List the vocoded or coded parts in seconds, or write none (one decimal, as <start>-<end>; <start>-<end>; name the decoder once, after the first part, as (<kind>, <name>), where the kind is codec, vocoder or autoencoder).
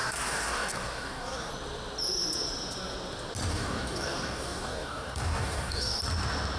0.0-1.5 (codec, DAC); 3.5-6.0